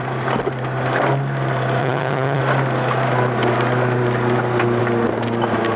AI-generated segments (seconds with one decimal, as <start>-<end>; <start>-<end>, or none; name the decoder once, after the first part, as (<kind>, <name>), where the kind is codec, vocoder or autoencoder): 1.8-2.4 (vocoder, HiFi-GAN)